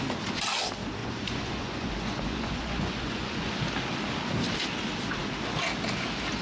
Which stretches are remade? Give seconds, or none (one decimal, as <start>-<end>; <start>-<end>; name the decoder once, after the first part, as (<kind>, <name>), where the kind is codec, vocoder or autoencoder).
1.0-3.5 (vocoder, Vocos)